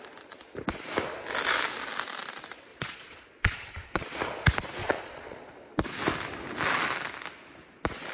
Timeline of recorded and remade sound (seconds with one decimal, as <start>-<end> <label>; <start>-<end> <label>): 0.0-2.7 recorded; 2.7-4.2 remade; 4.2-4.8 recorded; 4.8-5.5 remade; 5.5-8.1 recorded

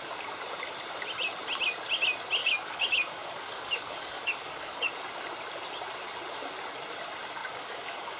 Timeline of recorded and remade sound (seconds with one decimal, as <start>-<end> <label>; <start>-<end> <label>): 0.0-2.4 recorded; 2.4-4.9 remade; 4.9-7.4 recorded; 7.4-8.2 remade

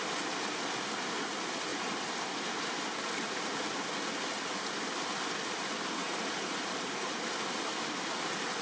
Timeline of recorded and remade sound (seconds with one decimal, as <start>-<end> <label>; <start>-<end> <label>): 0.0-1.7 recorded; 1.7-2.2 remade; 2.2-6.0 recorded; 6.0-7.3 remade; 7.3-8.6 recorded

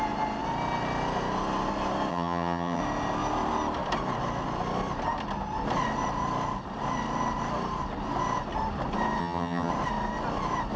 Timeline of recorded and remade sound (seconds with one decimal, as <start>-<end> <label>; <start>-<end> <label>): 0.0-2.1 recorded; 2.1-2.8 remade; 2.8-9.2 recorded; 9.2-9.7 remade; 9.7-10.8 recorded